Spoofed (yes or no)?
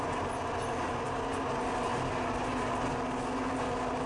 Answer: no